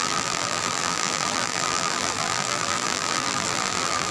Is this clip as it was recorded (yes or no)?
no